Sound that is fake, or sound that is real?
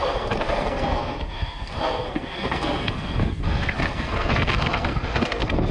fake